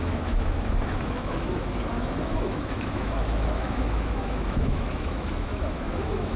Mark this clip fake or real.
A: fake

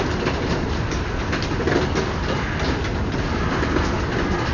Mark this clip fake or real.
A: real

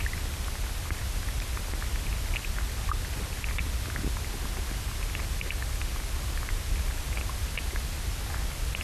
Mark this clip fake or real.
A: real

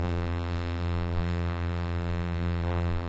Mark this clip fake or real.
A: fake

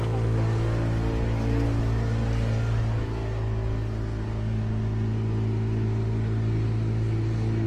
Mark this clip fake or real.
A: real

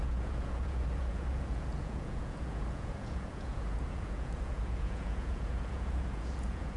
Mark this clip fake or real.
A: fake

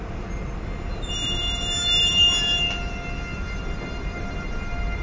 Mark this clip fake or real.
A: real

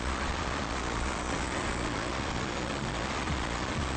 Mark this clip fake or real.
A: fake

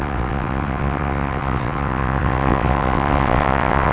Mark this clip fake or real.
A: fake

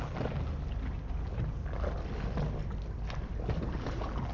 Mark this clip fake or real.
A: real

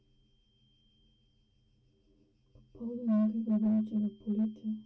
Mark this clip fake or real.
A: real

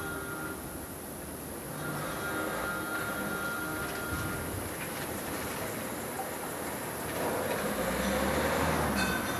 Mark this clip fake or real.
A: real